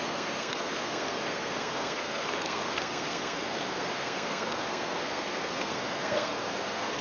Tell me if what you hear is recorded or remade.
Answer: remade